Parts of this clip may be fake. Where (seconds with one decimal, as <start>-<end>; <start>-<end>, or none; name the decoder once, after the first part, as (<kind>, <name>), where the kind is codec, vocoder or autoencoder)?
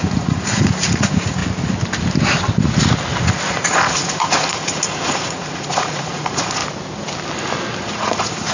0.0-1.4 (vocoder, Vocos); 3.5-6.6; 7.8-8.5